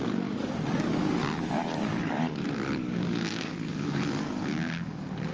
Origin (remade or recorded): remade